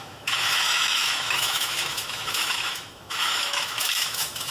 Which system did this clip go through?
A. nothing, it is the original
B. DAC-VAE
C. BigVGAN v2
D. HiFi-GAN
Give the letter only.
B